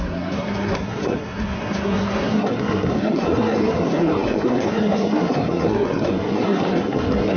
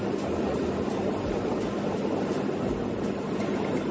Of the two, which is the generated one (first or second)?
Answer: first